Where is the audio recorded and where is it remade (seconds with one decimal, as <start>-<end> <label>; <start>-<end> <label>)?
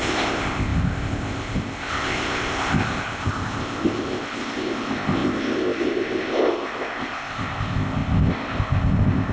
0.0-9.3 remade